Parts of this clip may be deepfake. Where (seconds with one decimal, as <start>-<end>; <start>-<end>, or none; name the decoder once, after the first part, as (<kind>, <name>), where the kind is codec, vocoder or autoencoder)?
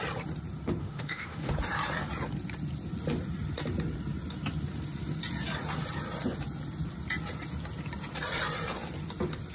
0.8-1.5 (autoencoder, DAC-VAE)